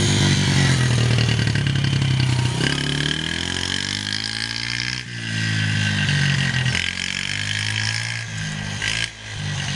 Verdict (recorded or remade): recorded